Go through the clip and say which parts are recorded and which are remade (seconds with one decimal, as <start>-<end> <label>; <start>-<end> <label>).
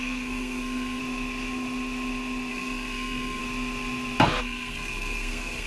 0.0-1.0 remade; 1.0-2.5 recorded; 2.5-3.4 remade; 3.4-4.4 recorded; 4.4-5.7 remade